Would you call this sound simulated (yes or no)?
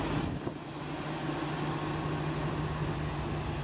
no